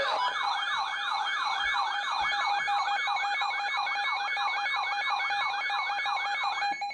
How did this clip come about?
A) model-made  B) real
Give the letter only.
B